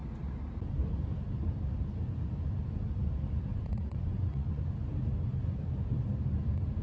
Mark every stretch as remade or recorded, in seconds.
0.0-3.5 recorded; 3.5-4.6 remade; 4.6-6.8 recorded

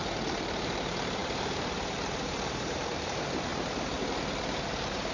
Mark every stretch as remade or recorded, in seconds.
0.0-3.5 remade; 3.5-4.6 recorded; 4.6-5.1 remade